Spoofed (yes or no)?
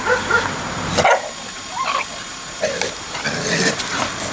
no